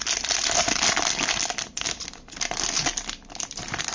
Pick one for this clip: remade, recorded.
recorded